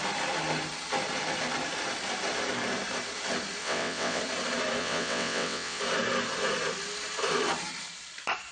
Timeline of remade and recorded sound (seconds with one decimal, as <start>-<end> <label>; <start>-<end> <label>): 0.0-3.6 recorded; 3.6-4.2 remade; 4.2-4.8 recorded; 4.8-5.8 remade; 5.8-8.5 recorded